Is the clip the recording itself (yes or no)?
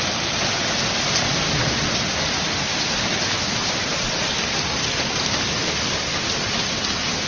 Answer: yes